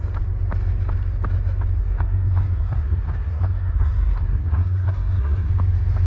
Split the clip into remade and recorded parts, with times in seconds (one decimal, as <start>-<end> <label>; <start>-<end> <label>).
0.0-1.8 recorded; 1.8-5.5 remade; 5.5-6.1 recorded